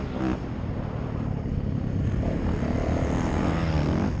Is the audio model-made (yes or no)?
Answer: no